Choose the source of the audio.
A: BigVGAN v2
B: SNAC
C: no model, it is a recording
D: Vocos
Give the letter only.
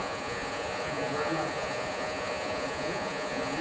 D